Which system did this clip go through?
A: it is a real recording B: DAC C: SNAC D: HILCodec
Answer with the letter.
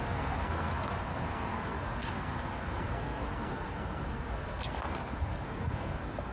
C